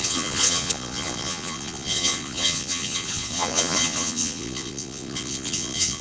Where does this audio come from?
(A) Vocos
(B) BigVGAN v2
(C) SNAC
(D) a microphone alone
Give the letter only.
A